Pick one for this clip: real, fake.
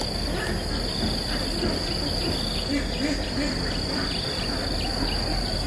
real